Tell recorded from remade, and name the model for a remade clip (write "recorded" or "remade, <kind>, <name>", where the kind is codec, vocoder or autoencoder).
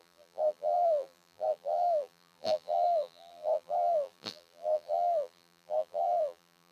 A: remade, vocoder, BigVGAN v2